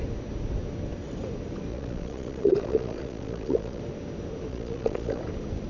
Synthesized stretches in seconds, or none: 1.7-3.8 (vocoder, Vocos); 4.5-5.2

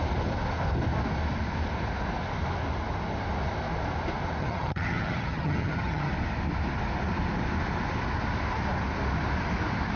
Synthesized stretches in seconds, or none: 4.4-6.1 (vocoder, HiFi-GAN)

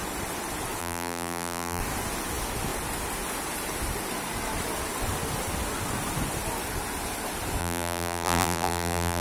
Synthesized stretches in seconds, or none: 0.8-1.8 (vocoder, BigVGAN v2); 7.6-9.2

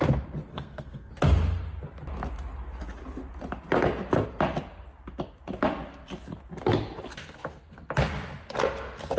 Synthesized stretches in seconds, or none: 0.5-1.1 (codec, SNAC)

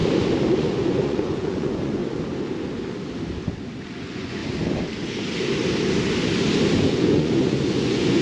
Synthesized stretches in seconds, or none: 0.5-2.0 (vocoder, Vocos); 4.0-4.4; 6.8-8.2

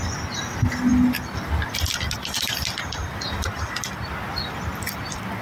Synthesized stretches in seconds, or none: none